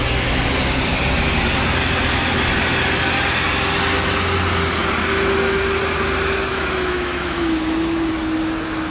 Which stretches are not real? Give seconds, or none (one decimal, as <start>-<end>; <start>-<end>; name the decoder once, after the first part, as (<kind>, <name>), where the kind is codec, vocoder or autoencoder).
6.5-8.1 (autoencoder, DAC-VAE)